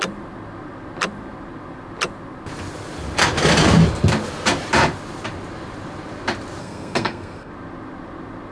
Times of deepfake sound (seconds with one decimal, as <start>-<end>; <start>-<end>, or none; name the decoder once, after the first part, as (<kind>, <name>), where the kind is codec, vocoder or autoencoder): 6.6-7.5 (codec, SNAC)